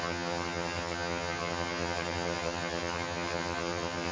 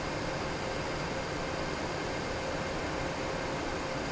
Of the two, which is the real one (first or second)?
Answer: second